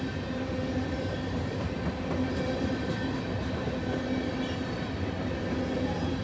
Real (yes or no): yes